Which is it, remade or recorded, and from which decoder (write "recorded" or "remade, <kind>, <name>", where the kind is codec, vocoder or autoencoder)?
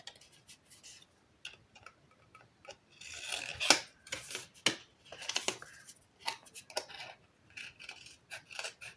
recorded